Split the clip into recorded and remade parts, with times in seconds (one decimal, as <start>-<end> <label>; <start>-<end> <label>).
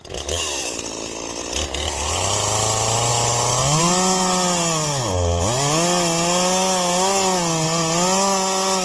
0.0-8.8 recorded